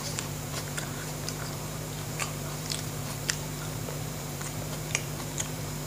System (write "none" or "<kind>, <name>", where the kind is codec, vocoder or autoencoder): vocoder, BigVGAN v2